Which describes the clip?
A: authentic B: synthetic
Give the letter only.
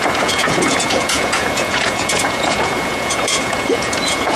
B